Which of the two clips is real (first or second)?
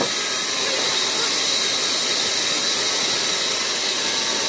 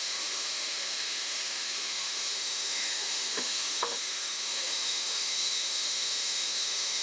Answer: first